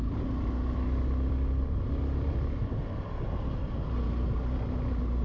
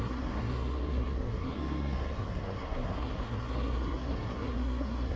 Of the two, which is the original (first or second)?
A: first